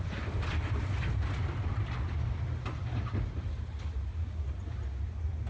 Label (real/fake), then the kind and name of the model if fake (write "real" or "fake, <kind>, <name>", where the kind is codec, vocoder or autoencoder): real